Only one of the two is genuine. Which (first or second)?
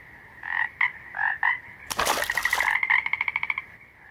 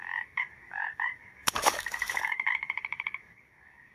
first